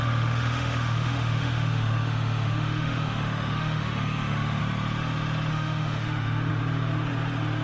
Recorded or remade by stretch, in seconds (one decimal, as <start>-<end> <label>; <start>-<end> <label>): 0.0-4.6 remade; 4.6-5.5 recorded; 5.5-6.5 remade; 6.5-7.6 recorded